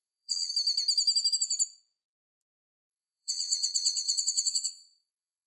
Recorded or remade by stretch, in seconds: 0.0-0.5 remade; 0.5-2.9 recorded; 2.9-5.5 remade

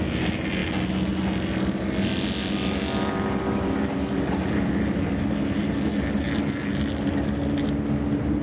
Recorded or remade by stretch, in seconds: 0.0-8.4 recorded

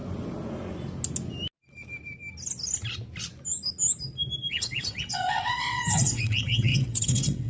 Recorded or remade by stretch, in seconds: 0.0-4.5 recorded; 4.5-7.5 remade

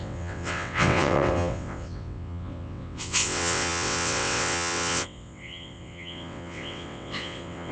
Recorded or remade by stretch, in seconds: 0.0-7.7 remade

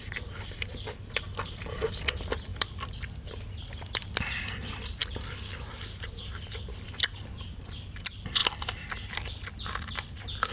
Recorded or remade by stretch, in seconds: 0.0-10.5 recorded